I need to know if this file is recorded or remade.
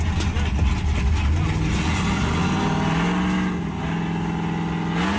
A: recorded